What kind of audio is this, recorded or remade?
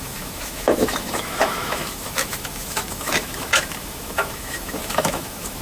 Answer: remade